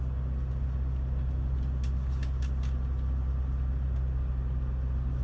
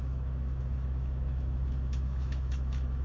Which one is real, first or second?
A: first